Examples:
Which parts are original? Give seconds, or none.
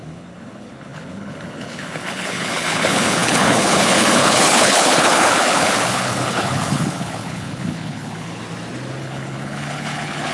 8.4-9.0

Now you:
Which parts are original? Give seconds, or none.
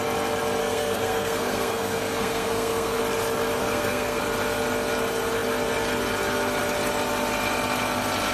0.0-0.6; 3.0-3.6; 4.2-8.3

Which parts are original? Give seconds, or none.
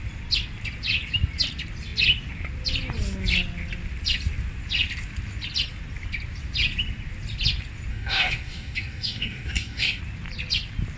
0.0-7.9; 10.0-11.0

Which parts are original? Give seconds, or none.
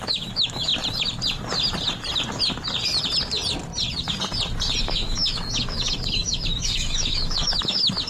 0.7-4.8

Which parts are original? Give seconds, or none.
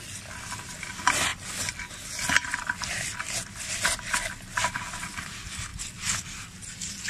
0.0-7.1